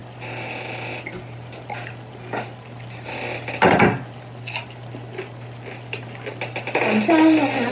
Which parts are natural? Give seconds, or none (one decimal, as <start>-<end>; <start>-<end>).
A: 0.0-7.7